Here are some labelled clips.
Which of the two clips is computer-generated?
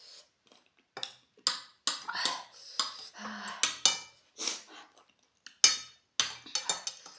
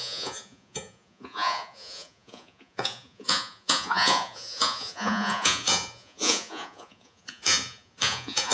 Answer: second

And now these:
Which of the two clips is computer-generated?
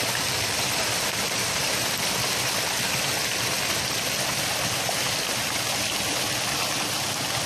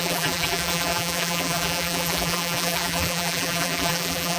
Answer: second